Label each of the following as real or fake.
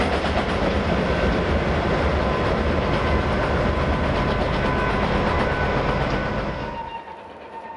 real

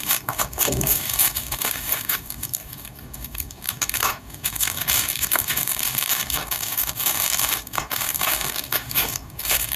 fake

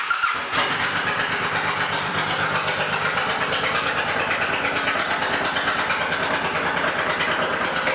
real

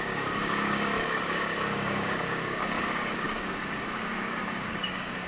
fake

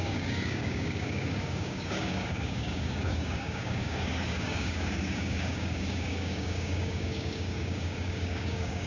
fake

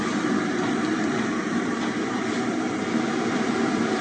fake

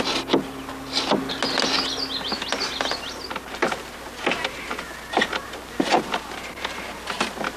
real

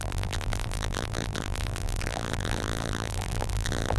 fake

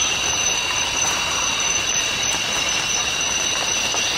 real